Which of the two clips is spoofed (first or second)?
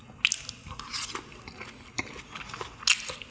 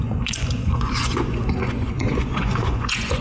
second